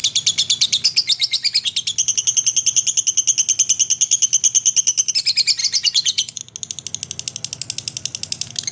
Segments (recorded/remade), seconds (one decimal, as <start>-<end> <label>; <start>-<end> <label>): 0.0-5.6 recorded; 5.6-6.4 remade; 6.4-8.7 recorded